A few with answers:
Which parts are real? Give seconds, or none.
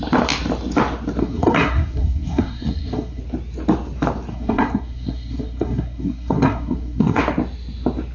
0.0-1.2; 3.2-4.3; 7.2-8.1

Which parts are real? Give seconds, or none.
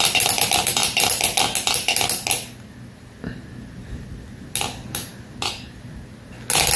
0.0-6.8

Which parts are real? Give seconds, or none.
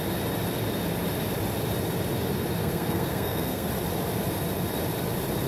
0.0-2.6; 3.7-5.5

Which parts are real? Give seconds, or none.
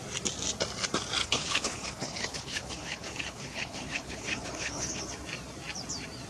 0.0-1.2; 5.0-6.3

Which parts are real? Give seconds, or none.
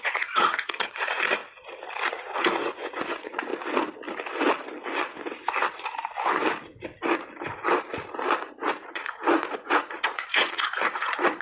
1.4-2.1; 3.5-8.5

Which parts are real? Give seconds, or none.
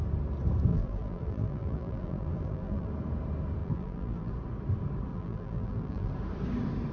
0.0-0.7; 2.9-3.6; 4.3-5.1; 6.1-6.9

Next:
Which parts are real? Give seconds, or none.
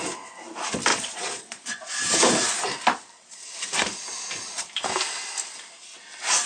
0.0-0.9; 1.9-6.5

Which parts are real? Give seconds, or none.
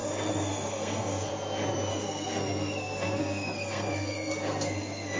1.3-1.9